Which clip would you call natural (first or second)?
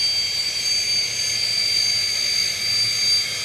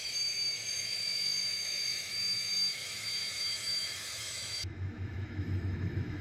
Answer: first